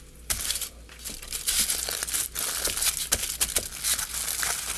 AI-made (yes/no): no